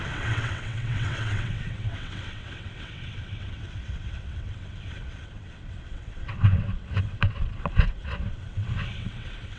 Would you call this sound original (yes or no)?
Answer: no